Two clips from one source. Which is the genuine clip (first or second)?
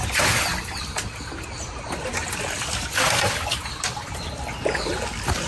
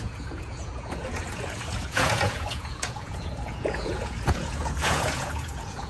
first